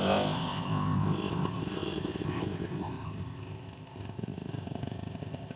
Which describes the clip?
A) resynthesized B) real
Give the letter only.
A